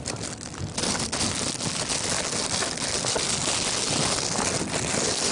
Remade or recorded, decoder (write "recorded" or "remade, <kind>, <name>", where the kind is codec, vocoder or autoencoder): recorded